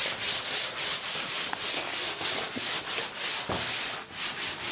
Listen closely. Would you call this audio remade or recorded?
recorded